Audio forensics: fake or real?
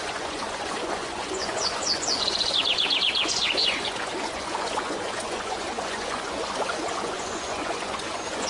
fake